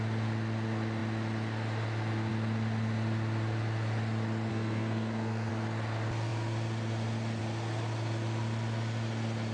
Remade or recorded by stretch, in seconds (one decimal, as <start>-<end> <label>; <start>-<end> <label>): 0.0-4.5 recorded; 4.5-5.5 remade; 5.5-9.5 recorded